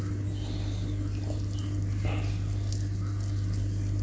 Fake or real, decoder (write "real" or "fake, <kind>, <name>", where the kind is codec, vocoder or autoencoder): real